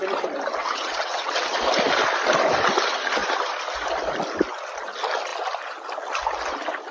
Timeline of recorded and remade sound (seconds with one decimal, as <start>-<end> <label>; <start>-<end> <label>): 0.0-0.6 recorded; 0.6-1.4 remade; 1.4-6.9 recorded